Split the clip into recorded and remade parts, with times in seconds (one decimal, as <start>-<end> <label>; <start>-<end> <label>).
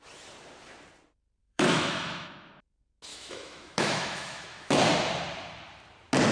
0.0-1.4 recorded; 1.4-2.5 remade; 2.5-3.1 recorded; 3.1-4.8 remade; 4.8-6.3 recorded